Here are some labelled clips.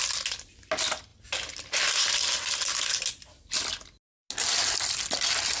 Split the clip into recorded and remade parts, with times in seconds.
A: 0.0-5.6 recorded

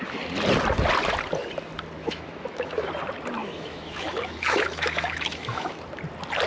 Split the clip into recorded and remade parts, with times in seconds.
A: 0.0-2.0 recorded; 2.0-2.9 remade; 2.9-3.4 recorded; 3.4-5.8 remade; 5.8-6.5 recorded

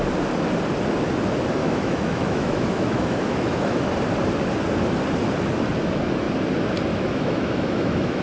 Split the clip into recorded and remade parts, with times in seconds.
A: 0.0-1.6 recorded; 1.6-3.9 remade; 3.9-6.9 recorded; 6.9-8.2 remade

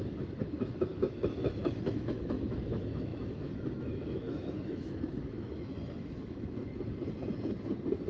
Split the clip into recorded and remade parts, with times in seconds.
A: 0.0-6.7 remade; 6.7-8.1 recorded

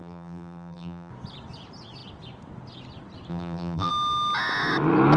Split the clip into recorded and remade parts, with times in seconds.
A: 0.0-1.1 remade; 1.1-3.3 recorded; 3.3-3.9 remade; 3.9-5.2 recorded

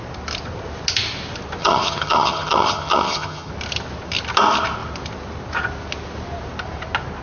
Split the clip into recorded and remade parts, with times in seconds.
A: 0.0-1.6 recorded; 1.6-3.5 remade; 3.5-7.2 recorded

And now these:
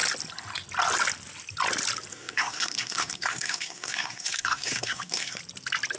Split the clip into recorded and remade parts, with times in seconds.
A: 0.0-2.1 recorded; 2.1-5.4 remade; 5.4-6.0 recorded

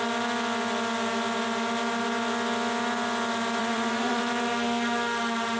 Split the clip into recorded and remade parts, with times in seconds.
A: 0.0-3.6 recorded; 3.6-4.2 remade; 4.2-5.6 recorded